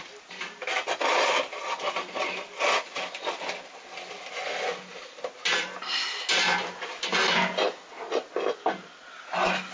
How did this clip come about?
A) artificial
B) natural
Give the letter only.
B